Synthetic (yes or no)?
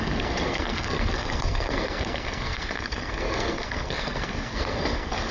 yes